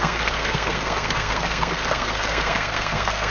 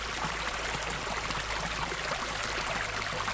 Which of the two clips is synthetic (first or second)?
first